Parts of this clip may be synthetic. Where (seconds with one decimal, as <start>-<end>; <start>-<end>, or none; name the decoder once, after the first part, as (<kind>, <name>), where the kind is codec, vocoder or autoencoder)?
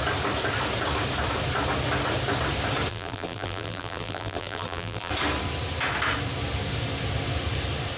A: 2.9-5.1 (vocoder, BigVGAN v2)